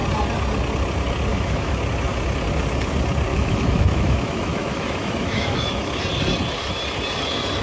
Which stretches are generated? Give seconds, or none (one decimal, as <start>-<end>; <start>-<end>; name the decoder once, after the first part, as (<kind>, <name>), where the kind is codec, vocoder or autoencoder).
1.3-1.8 (autoencoder, DAC-VAE); 3.3-6.0